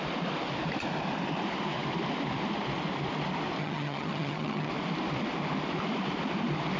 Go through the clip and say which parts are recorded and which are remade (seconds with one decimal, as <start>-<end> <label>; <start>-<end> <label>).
0.0-3.6 recorded; 3.6-4.7 remade; 4.7-6.8 recorded